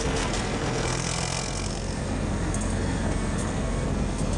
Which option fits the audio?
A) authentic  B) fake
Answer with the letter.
B